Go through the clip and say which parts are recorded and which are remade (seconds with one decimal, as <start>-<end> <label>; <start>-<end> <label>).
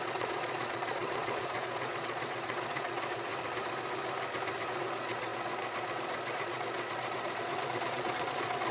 0.0-3.3 remade; 3.3-4.8 recorded; 4.8-8.7 remade